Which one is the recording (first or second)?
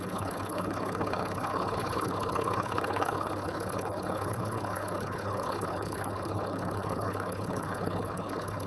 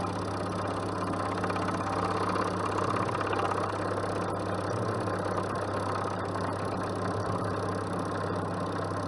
second